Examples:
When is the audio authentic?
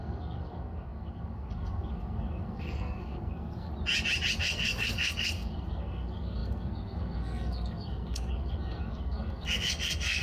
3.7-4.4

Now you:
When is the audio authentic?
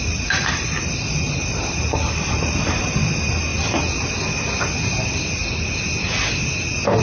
0.0-7.0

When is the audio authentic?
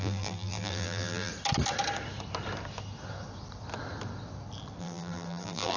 1.3-4.8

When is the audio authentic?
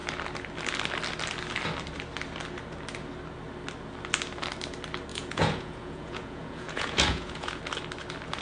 0.0-5.1; 7.6-8.4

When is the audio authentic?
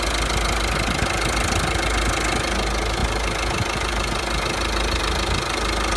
0.0-6.0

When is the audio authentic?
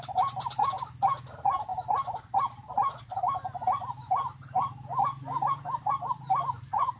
0.0-7.0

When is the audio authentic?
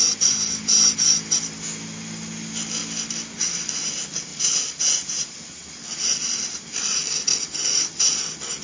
0.0-8.6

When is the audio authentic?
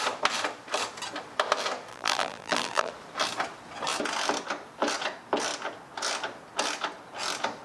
0.0-1.9; 2.9-7.6